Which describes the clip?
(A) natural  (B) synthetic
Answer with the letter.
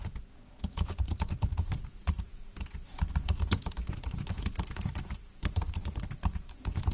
B